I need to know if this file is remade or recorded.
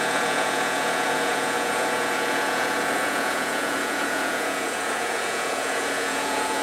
remade